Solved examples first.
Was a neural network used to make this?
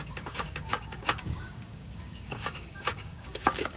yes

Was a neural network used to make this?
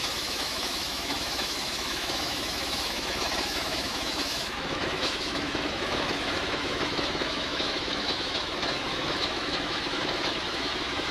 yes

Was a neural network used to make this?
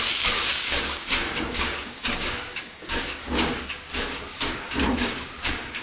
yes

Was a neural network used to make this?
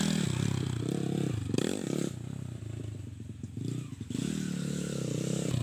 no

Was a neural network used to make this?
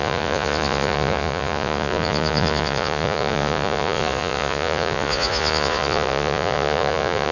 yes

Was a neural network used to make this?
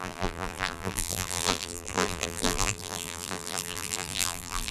yes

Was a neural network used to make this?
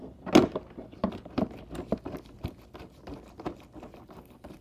no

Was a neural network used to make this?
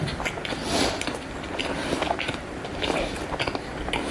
no